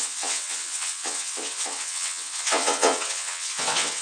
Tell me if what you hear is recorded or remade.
remade